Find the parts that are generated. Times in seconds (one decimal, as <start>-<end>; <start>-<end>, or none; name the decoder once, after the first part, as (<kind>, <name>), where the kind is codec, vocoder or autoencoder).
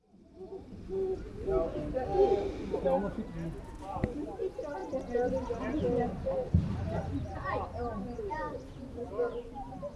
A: none